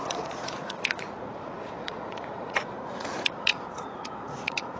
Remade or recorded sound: remade